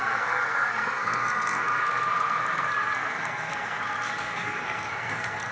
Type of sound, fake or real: fake